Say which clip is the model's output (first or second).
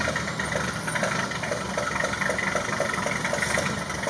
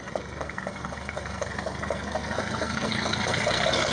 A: second